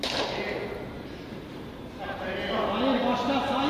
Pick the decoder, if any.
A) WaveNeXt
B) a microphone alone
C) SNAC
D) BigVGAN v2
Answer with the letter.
B